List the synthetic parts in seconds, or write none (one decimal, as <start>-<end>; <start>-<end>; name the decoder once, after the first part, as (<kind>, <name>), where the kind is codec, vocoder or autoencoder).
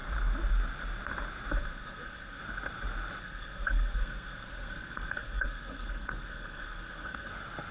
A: 1.6-2.4 (codec, SNAC); 3.2-7.3